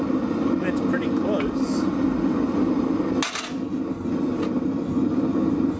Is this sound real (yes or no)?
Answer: yes